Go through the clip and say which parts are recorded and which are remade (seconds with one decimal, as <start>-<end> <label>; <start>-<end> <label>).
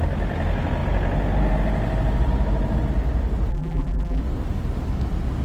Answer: 0.0-3.5 recorded; 3.5-4.2 remade; 4.2-5.4 recorded